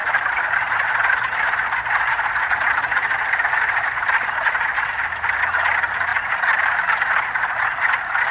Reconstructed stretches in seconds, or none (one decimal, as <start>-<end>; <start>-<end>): 0.0-8.3